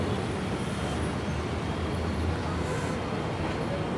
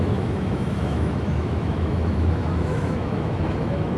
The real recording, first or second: first